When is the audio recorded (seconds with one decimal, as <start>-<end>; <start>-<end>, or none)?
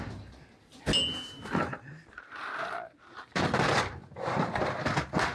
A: none